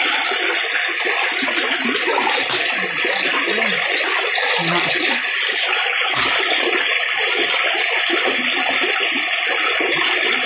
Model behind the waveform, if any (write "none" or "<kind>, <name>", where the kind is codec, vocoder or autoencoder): none